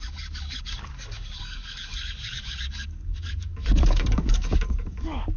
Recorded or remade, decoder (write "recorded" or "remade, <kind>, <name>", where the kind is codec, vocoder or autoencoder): remade, codec, DAC